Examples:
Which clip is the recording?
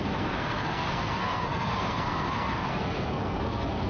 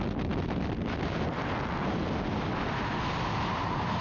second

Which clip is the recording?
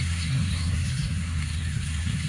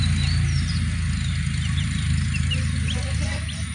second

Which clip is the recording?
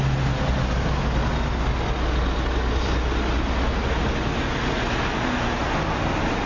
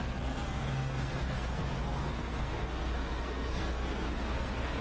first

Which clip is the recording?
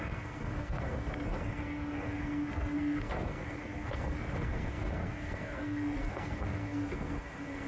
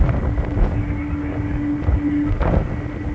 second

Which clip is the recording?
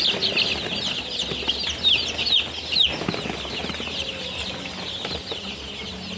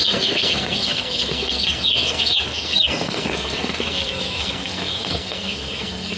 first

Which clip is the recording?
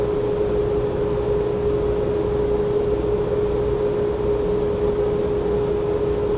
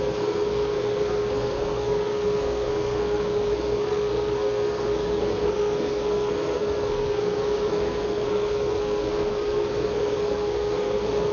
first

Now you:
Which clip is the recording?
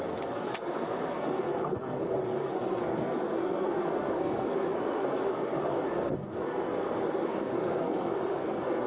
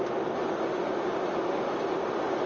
second